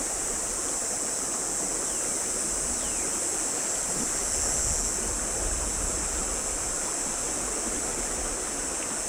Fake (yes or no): no